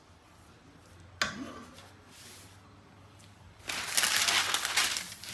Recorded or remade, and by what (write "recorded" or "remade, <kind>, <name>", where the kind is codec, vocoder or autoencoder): recorded